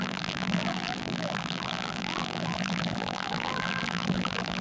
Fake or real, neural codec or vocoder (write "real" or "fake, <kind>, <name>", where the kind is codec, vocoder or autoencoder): fake, vocoder, BigVGAN v2